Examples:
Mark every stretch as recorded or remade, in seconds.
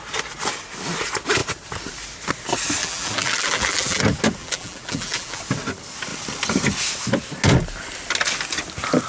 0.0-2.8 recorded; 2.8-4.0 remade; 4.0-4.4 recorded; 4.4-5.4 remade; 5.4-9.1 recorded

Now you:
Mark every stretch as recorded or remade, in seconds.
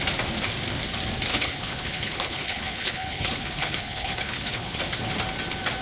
0.0-1.3 recorded; 1.3-4.8 remade; 4.8-5.8 recorded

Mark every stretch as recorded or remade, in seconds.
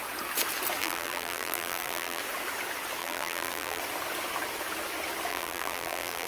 0.0-0.8 recorded; 0.8-2.2 remade; 2.2-3.0 recorded; 3.0-3.8 remade; 3.8-5.3 recorded; 5.3-6.3 remade